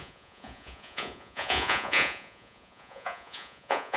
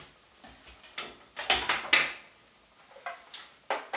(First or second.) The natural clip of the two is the second